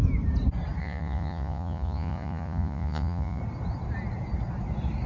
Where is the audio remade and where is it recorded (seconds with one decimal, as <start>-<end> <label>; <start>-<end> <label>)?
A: 0.0-0.8 recorded; 0.8-3.4 remade; 3.4-5.1 recorded

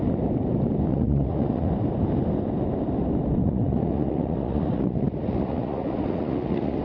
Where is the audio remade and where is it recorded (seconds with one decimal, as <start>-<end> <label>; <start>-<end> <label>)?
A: 0.0-0.9 recorded; 0.9-1.7 remade; 1.7-3.4 recorded; 3.4-6.8 remade

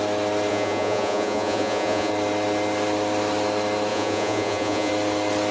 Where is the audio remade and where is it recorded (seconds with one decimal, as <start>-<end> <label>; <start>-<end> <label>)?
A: 0.0-0.5 recorded; 0.5-2.1 remade; 2.1-3.9 recorded; 3.9-4.9 remade; 4.9-5.5 recorded

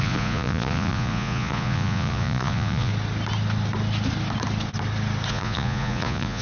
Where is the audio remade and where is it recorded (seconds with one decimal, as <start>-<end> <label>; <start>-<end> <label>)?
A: 0.0-2.9 remade; 2.9-5.3 recorded; 5.3-6.4 remade

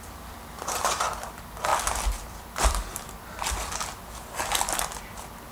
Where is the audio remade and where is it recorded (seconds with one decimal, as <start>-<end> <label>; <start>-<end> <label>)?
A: 0.0-5.5 recorded

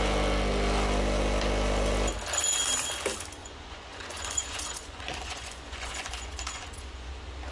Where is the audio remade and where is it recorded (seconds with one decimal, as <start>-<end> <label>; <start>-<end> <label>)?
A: 0.0-3.4 recorded; 3.4-7.1 remade; 7.1-7.5 recorded

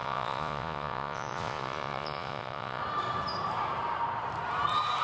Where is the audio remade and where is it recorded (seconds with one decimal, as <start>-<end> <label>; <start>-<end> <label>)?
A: 0.0-2.8 remade; 2.8-5.0 recorded